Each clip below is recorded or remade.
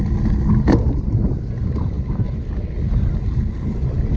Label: recorded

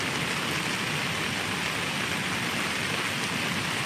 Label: recorded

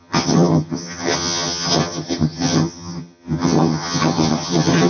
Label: remade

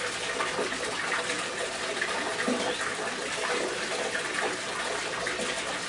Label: recorded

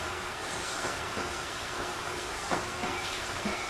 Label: remade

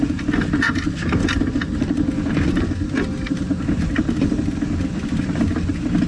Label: recorded